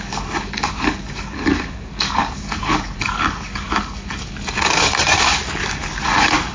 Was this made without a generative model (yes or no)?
no